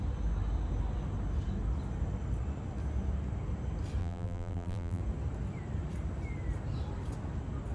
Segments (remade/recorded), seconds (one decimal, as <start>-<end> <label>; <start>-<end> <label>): 0.0-4.0 recorded; 4.0-5.0 remade; 5.0-7.7 recorded